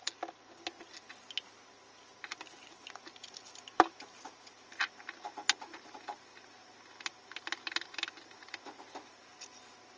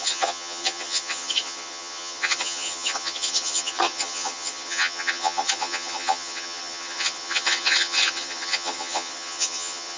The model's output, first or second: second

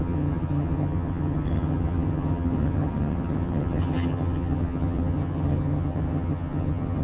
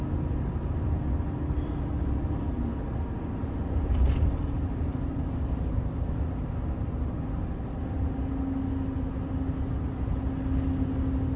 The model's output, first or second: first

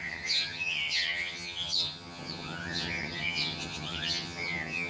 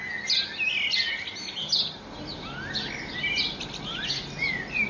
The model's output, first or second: first